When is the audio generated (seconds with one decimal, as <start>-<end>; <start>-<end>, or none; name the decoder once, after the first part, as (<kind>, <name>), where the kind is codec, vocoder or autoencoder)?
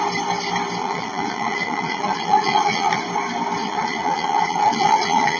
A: 0.8-3.0 (vocoder, Vocos); 3.6-5.4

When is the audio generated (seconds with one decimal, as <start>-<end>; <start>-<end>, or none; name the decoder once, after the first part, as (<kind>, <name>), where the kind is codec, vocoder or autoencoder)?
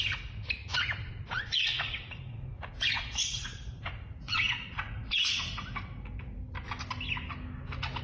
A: 0.6-5.4 (vocoder, Vocos)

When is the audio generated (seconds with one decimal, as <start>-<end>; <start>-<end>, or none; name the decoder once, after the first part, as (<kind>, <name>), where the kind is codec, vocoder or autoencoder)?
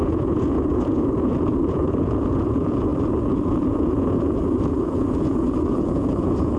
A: 0.0-2.9 (vocoder, Vocos); 3.5-6.6